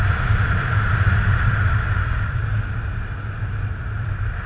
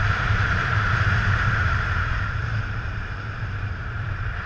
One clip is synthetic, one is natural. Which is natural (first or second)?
first